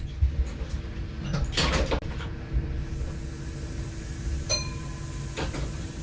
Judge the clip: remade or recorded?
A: recorded